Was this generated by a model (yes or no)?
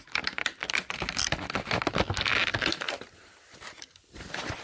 no